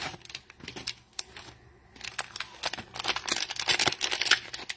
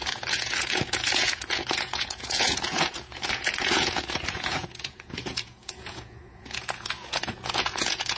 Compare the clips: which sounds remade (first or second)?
second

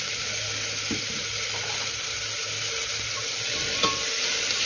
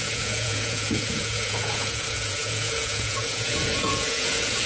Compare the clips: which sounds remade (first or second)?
second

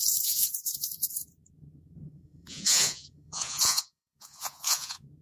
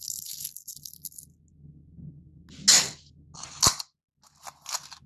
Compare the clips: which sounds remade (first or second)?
first